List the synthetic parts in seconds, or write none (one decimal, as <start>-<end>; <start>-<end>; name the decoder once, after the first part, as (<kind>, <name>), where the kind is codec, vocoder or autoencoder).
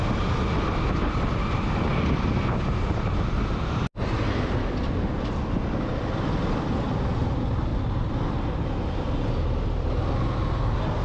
none